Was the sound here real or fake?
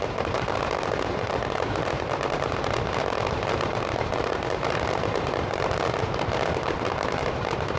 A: fake